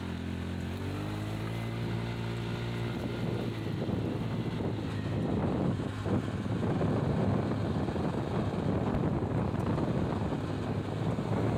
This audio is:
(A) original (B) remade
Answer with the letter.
A